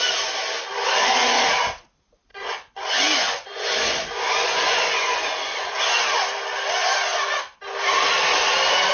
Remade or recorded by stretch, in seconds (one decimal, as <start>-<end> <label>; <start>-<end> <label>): 0.0-2.3 recorded; 2.3-5.8 remade; 5.8-8.9 recorded